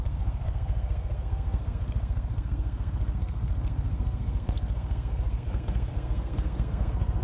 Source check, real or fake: fake